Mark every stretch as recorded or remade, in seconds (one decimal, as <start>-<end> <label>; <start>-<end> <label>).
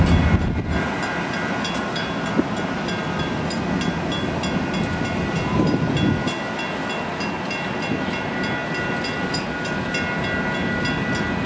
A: 0.0-11.5 recorded